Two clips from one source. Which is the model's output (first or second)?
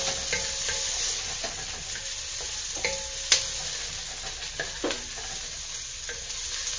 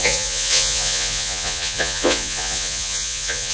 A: second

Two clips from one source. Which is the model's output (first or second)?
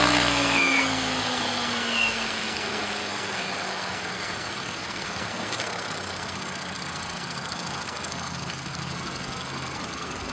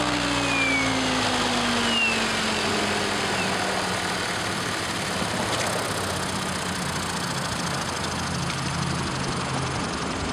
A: first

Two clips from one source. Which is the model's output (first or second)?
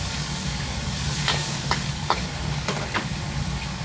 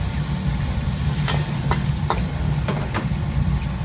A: first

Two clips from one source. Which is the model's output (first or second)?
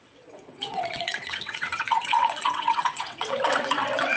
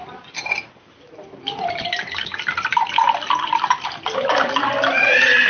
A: first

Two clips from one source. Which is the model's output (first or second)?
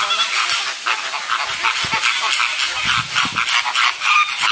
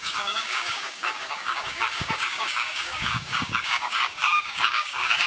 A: second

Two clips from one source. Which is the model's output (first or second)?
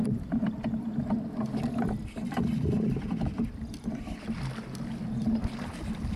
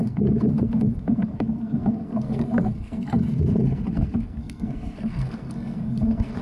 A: second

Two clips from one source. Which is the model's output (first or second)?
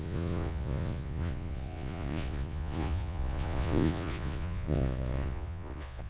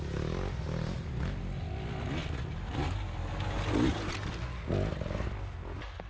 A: first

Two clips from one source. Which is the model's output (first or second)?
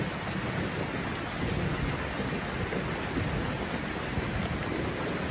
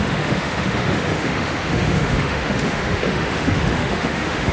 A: second